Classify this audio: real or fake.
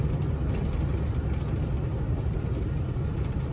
real